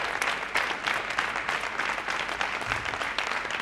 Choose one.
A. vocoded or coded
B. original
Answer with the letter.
B